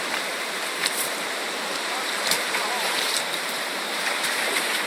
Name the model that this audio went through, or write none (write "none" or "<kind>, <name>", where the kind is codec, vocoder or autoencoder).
vocoder, BigVGAN v2